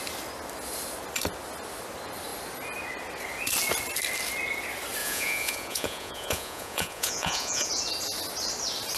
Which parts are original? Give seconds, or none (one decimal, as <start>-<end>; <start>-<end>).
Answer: 0.0-5.0; 7.7-9.0